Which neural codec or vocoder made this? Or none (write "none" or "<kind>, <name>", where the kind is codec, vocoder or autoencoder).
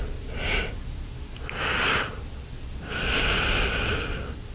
none